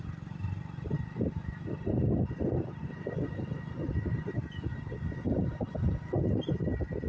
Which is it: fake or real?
real